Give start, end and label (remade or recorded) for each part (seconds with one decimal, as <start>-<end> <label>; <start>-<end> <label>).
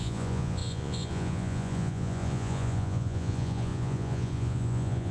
0.0-5.1 remade